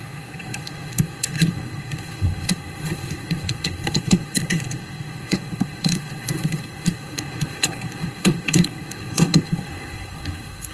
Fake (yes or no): yes